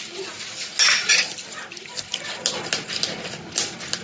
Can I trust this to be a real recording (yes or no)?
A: yes